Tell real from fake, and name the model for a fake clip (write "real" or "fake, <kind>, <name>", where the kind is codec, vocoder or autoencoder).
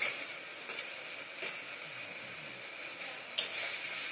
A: real